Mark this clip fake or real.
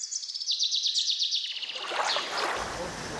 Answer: real